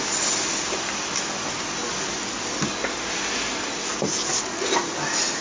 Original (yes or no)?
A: yes